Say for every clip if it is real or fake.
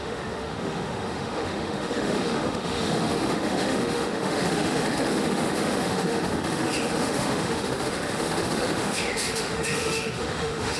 fake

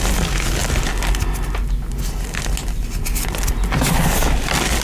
real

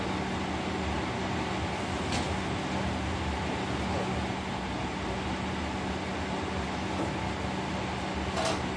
real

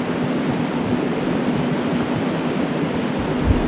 real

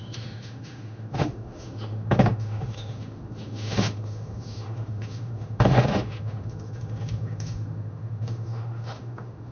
fake